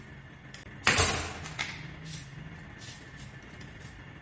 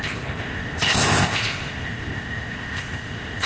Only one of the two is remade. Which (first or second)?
second